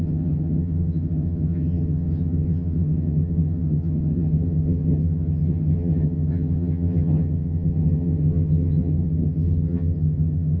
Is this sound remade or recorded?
remade